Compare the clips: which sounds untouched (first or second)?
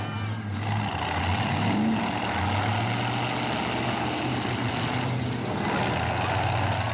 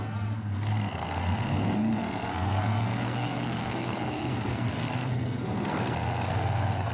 first